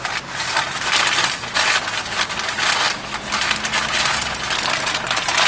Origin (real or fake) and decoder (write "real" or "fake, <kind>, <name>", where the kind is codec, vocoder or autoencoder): real